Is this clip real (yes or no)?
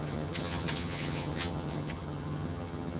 no